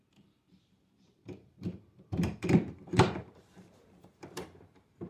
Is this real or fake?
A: fake